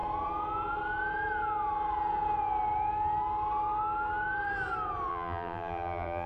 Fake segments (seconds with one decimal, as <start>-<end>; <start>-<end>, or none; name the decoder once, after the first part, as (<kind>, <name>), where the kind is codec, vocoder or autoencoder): 5.1-6.3 (vocoder, BigVGAN v2)